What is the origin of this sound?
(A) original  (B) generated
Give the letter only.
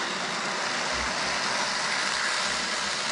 A